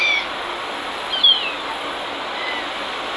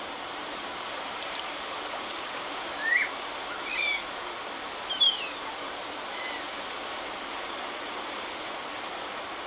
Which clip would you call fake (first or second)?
second